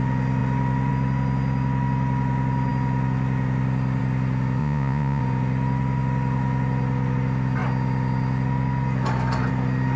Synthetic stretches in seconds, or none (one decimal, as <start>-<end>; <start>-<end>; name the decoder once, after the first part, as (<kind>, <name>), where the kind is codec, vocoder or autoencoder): 4.6-5.2 (vocoder, Vocos)